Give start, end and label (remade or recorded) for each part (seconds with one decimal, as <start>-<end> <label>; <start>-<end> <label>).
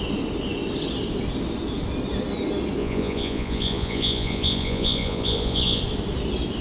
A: 0.0-2.8 recorded; 2.8-5.8 remade; 5.8-6.6 recorded